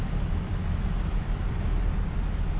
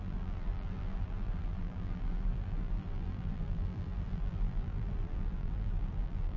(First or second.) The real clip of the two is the first